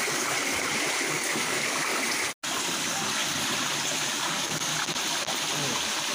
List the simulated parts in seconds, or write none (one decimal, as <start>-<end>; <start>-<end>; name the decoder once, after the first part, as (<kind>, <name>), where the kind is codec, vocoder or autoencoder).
0.0-0.5 (codec, DAC); 1.1-1.9; 2.6-3.2; 4.1-4.7